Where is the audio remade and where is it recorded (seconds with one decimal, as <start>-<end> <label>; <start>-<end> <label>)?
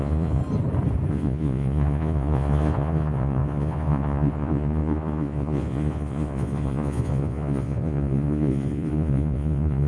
0.0-0.4 remade; 0.4-1.1 recorded; 1.1-9.9 remade